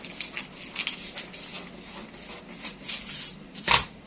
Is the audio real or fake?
real